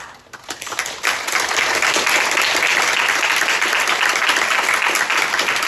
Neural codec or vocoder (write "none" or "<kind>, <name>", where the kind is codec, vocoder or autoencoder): none